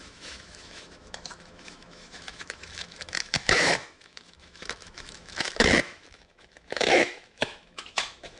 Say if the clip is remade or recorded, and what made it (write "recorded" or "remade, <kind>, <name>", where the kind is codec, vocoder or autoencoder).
remade, autoencoder, DAC-VAE